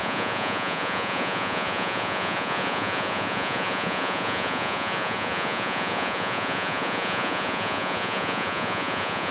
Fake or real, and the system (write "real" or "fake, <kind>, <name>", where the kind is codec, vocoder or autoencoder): fake, vocoder, Vocos